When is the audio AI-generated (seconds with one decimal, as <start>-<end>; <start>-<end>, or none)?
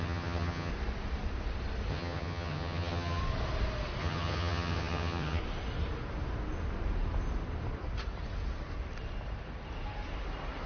0.0-0.7; 1.9-3.2; 4.0-5.4